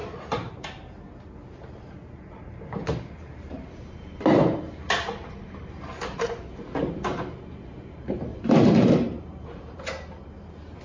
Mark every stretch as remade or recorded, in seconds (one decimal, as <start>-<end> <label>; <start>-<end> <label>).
0.0-0.5 remade; 0.5-3.3 recorded; 3.3-6.4 remade; 6.4-8.3 recorded; 8.3-9.8 remade; 9.8-10.8 recorded